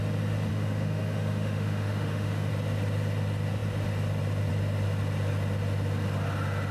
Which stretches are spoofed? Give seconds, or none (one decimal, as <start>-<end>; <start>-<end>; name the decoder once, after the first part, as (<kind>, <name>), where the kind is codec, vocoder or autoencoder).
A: 0.5-2.5 (autoencoder, DAC-VAE)